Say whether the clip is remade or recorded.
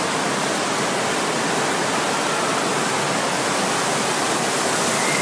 recorded